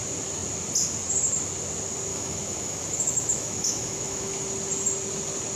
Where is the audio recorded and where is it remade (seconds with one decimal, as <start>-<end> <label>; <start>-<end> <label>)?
0.0-2.1 recorded; 2.1-4.3 remade; 4.3-5.6 recorded